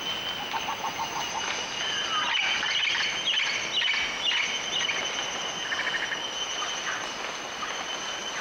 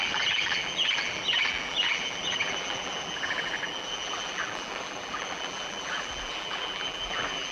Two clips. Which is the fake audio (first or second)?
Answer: second